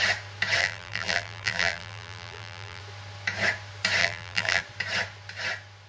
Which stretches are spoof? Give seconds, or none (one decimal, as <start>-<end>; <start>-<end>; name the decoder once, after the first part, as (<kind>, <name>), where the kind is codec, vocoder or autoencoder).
0.6-2.8 (vocoder, BigVGAN v2); 4.0-4.6